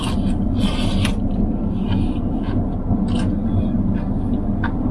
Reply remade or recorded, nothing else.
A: recorded